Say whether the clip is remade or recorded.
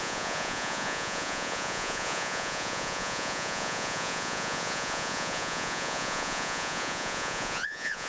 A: remade